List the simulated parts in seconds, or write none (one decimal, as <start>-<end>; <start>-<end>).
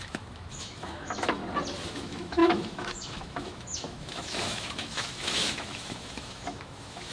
0.0-1.4; 1.9-7.1